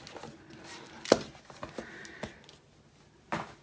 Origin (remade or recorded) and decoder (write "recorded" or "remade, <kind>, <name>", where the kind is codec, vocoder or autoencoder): recorded